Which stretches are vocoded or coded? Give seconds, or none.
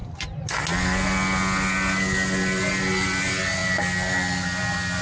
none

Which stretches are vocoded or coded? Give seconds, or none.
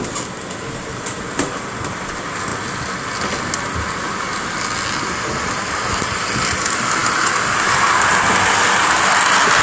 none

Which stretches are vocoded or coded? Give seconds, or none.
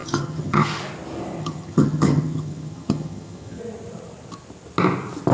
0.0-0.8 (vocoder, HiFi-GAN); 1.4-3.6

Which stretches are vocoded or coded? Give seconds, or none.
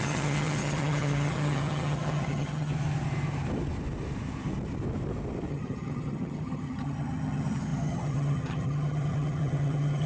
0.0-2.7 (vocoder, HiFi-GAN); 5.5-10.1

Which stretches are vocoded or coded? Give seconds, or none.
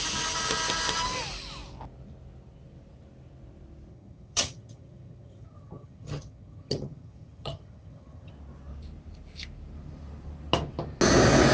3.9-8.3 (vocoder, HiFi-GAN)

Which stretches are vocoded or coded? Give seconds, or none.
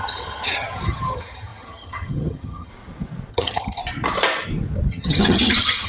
0.0-2.7 (vocoder, HiFi-GAN); 3.3-3.8; 4.9-5.9